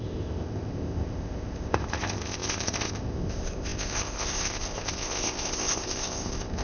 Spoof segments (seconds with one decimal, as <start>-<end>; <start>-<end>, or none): 0.0-6.6